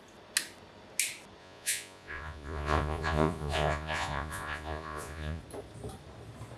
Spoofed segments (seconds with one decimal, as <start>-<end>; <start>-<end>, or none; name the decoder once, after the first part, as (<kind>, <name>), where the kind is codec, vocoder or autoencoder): 1.4-5.4 (vocoder, Vocos)